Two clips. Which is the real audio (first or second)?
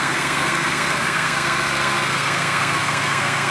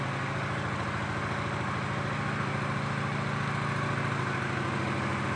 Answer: second